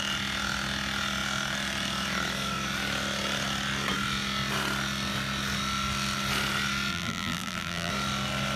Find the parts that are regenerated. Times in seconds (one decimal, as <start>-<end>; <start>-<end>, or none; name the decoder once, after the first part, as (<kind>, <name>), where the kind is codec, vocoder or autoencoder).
6.9-7.9 (vocoder, BigVGAN v2)